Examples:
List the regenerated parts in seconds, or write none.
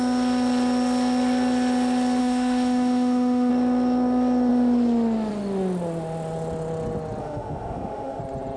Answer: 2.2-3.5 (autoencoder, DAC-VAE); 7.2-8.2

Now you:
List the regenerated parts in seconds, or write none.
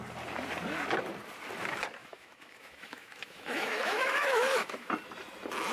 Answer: 2.0-4.9 (autoencoder, DAC-VAE)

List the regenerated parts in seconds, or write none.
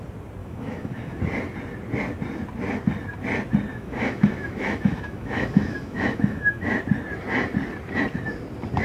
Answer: 0.4-1.2 (autoencoder, DAC-VAE); 3.7-6.7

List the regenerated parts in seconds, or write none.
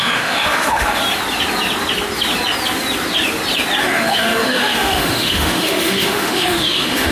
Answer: 0.0-1.0 (autoencoder, DAC-VAE); 3.8-7.1